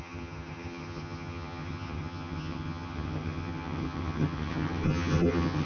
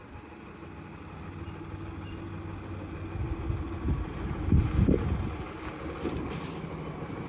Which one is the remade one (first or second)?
first